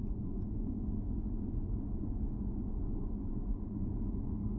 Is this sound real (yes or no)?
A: no